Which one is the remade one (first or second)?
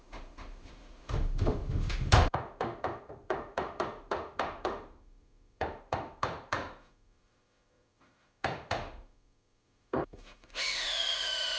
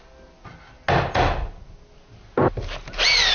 first